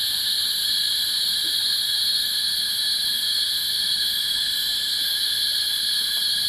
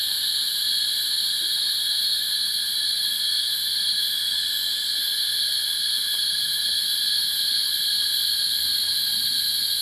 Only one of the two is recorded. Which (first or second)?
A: second